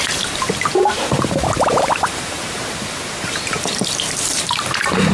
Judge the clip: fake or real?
fake